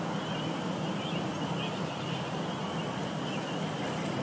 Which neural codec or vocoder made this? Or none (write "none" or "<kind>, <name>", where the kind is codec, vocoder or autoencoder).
none